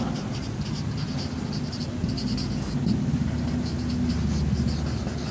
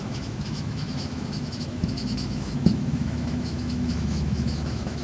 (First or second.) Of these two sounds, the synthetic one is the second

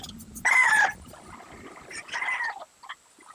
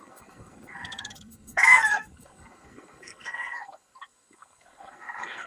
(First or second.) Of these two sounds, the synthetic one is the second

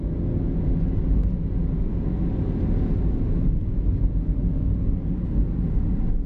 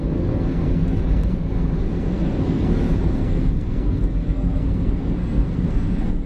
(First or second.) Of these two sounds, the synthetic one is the second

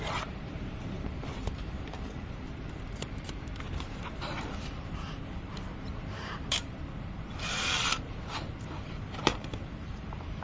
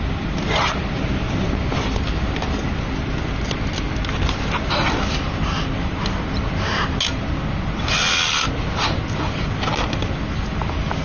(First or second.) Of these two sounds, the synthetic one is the first